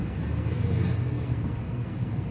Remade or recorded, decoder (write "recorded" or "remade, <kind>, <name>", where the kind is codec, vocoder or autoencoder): remade, codec, SNAC